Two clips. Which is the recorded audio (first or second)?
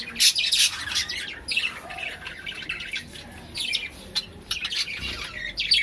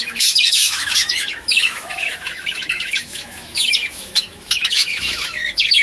first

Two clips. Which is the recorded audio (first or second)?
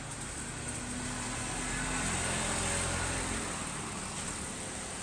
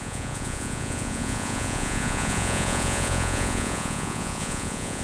first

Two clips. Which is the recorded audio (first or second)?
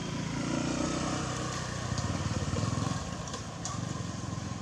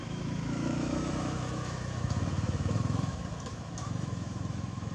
first